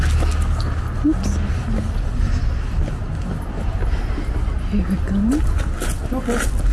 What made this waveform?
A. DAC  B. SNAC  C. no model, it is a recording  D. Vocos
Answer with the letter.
C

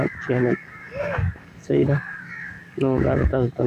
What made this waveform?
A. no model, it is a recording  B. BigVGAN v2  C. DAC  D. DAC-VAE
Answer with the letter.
C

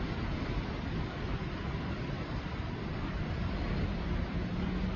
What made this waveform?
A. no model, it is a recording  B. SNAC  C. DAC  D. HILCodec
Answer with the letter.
A